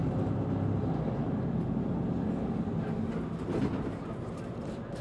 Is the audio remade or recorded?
recorded